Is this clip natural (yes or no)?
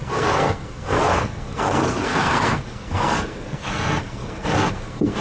no